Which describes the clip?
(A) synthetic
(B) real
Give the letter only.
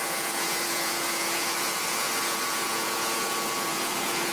A